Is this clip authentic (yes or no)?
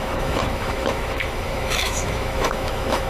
no